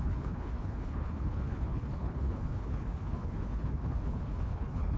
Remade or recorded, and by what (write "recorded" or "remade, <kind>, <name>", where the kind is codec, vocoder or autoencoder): remade, codec, HILCodec